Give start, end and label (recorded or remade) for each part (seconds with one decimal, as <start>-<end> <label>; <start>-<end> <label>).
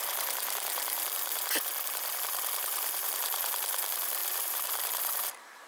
0.0-1.4 remade; 1.4-2.1 recorded; 2.1-5.7 remade